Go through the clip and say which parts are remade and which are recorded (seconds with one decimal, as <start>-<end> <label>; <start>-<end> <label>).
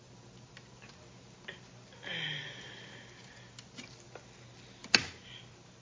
0.0-5.8 recorded